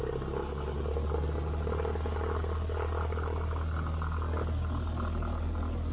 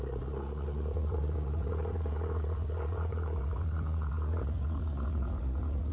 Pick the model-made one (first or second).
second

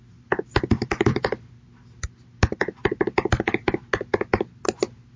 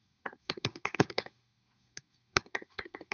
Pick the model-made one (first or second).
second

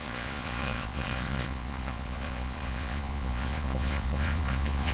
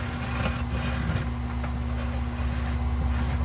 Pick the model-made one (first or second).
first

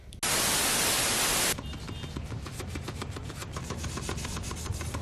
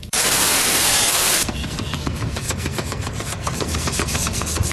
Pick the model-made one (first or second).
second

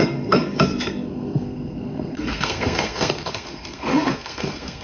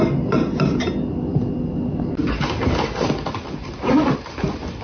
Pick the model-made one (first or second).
first